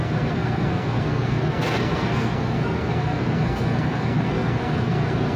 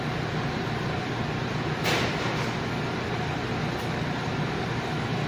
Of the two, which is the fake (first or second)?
first